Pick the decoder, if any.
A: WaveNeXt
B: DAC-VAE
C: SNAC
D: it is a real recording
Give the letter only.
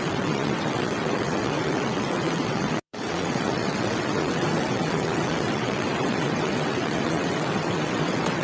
A